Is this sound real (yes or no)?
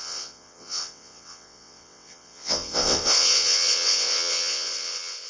no